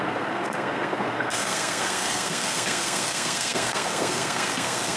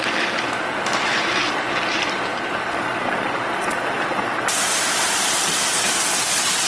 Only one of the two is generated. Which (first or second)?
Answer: first